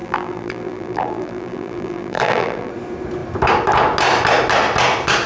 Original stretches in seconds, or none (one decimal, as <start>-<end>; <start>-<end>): 2.7-5.3